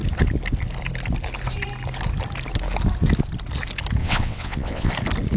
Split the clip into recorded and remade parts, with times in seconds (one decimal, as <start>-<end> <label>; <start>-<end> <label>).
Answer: 0.0-4.0 recorded; 4.0-4.9 remade; 4.9-5.4 recorded